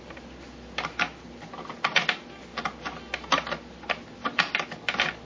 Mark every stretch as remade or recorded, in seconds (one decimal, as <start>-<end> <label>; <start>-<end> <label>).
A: 0.0-5.3 recorded